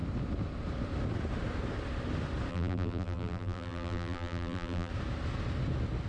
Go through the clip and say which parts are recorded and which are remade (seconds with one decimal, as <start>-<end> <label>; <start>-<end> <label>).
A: 0.0-2.5 recorded; 2.5-4.9 remade; 4.9-6.1 recorded